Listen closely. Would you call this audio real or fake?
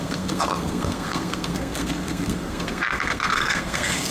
fake